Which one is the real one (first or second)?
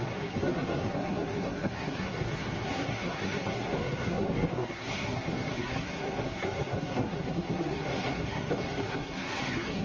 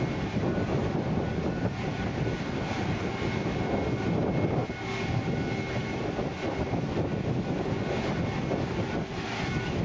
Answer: second